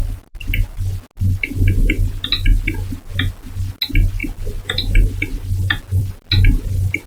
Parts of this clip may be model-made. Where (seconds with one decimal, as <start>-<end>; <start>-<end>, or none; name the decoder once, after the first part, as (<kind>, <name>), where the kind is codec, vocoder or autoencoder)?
none